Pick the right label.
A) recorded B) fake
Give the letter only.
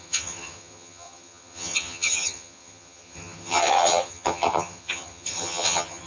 B